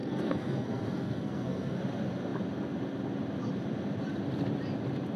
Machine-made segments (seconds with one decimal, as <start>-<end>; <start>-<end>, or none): 0.0-1.8